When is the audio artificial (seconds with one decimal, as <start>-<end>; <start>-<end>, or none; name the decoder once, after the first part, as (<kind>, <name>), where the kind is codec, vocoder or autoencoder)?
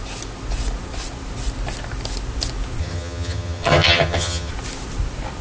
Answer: 2.8-4.5 (vocoder, HiFi-GAN)